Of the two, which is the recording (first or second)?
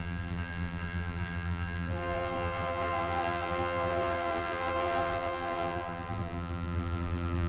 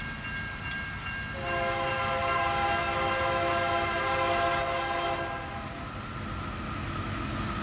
second